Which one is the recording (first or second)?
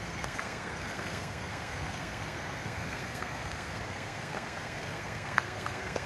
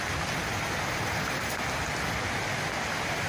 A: second